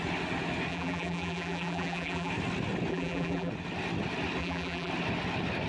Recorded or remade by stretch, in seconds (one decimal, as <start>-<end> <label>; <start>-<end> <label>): 0.0-0.7 recorded; 0.7-2.3 remade; 2.3-2.9 recorded; 2.9-3.5 remade; 3.5-4.4 recorded; 4.4-4.9 remade; 4.9-5.7 recorded